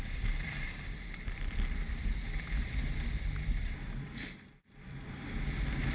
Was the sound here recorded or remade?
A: remade